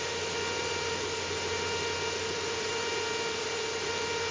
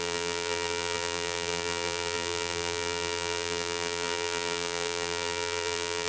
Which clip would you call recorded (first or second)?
first